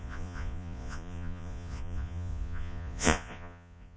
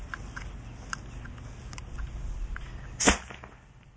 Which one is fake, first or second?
first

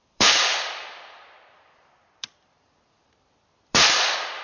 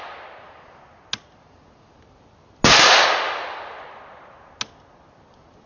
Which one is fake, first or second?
first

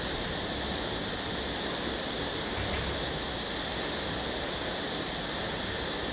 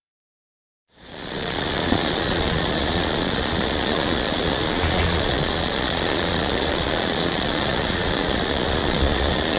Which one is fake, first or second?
second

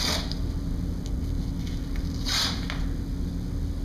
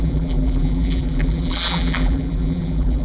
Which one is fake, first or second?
second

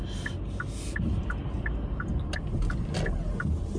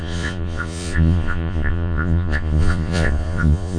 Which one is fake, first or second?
second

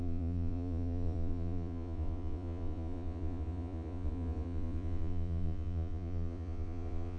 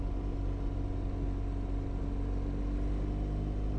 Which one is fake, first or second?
first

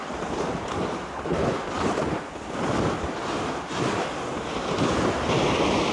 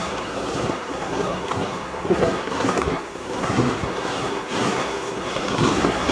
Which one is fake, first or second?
second